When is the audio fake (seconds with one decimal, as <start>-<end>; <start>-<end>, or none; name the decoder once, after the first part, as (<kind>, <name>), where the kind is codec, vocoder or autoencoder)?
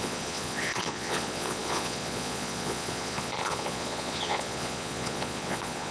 0.0-5.9 (vocoder, Vocos)